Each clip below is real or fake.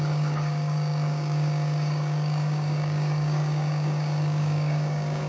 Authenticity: fake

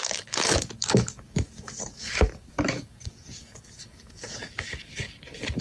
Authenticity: fake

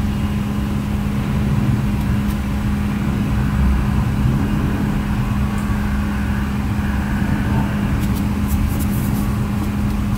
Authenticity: real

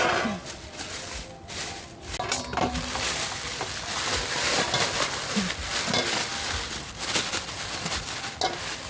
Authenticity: real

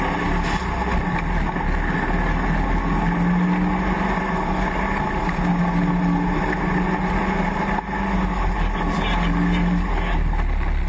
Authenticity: real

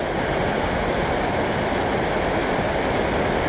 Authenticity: real